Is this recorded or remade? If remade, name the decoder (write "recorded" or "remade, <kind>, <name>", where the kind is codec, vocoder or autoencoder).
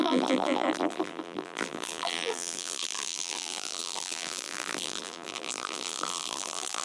remade, vocoder, BigVGAN v2